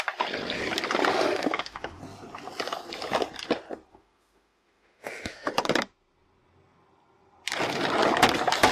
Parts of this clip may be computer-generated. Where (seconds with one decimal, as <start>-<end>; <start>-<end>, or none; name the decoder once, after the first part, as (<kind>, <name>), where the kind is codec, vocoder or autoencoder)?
1.1-2.0 (autoencoder, DAC-VAE); 3.9-5.5